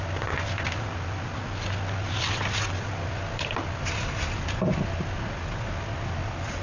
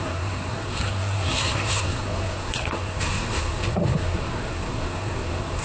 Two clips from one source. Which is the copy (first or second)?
second